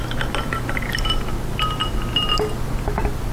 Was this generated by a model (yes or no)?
no